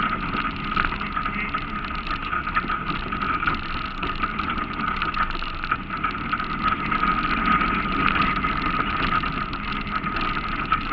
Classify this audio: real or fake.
real